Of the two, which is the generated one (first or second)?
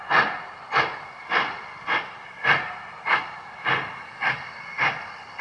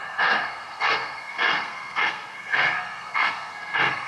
second